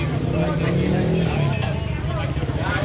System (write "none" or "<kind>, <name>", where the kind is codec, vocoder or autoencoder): none